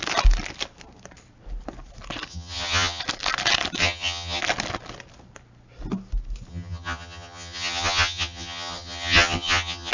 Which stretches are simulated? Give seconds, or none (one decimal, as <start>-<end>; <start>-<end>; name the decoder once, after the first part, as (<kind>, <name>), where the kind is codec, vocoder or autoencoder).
2.3-3.0 (vocoder, HiFi-GAN); 3.8-4.4; 6.5-9.9